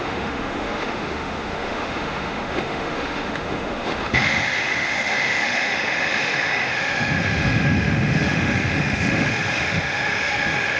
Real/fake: fake